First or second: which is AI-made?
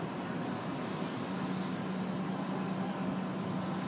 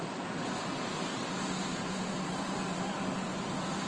second